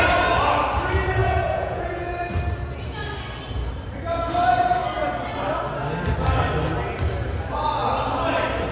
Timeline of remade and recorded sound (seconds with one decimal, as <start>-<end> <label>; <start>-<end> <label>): 0.0-1.2 recorded; 1.2-2.3 remade; 2.3-8.7 recorded